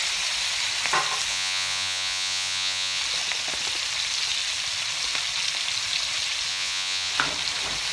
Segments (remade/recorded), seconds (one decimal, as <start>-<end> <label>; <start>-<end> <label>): 0.0-1.3 recorded; 1.3-3.0 remade; 3.0-6.5 recorded; 6.5-7.1 remade; 7.1-7.9 recorded